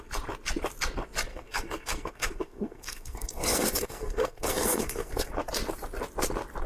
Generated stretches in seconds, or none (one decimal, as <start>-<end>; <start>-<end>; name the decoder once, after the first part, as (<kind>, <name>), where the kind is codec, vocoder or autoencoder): 1.3-5.3 (codec, SNAC)